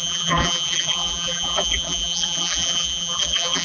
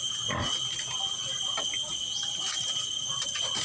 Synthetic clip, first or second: first